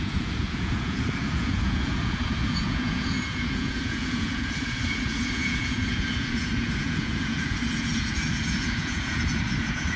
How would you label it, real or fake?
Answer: fake